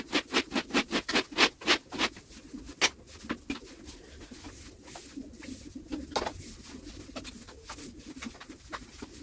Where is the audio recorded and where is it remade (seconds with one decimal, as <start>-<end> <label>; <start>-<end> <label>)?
0.0-9.2 recorded